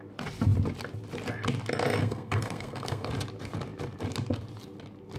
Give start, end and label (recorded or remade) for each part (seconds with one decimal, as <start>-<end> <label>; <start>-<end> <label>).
0.0-2.0 recorded; 2.0-3.1 remade; 3.1-5.2 recorded